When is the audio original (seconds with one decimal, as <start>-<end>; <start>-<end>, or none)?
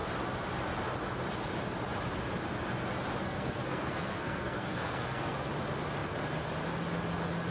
0.0-3.2; 5.4-7.5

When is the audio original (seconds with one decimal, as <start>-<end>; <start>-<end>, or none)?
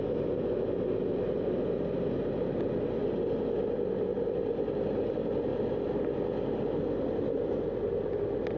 0.0-8.6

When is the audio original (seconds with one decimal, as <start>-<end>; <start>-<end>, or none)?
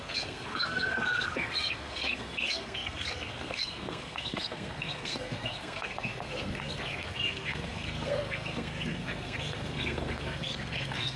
none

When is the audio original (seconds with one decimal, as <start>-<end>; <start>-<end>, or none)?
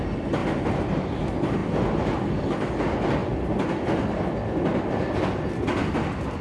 0.0-6.4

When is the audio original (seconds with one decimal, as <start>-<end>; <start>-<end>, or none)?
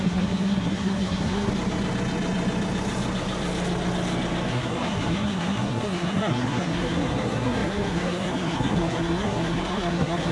1.5-4.5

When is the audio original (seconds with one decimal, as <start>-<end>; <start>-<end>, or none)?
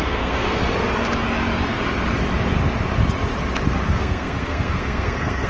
0.6-3.9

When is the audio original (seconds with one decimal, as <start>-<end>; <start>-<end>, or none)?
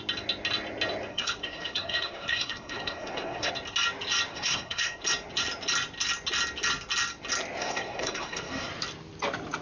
0.0-1.1; 3.5-4.3; 5.0-7.6; 8.7-9.6